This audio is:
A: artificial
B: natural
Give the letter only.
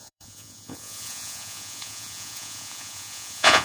A